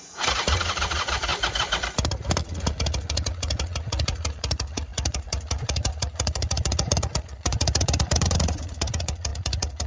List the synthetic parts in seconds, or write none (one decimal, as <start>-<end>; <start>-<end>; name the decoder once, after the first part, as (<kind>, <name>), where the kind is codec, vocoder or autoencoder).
0.0-1.3 (vocoder, Vocos); 2.4-9.9